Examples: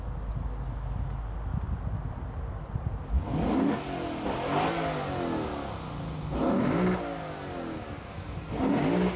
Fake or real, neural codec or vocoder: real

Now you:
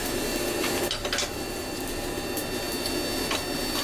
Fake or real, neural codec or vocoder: real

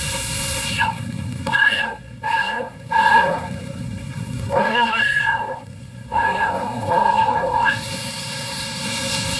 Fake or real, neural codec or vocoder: fake, codec, SNAC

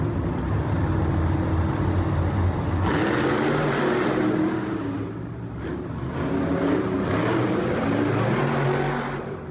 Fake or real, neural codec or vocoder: real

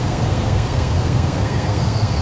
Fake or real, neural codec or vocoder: fake, codec, SNAC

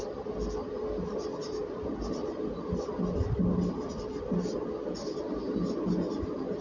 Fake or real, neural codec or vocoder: real